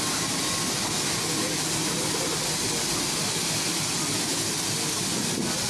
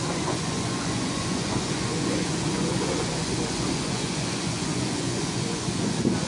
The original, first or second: first